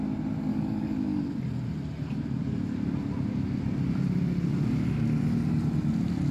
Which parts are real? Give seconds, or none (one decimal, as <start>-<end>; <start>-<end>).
0.0-0.5; 1.2-6.3